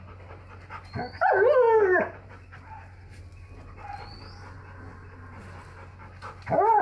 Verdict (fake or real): real